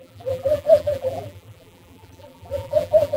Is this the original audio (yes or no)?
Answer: no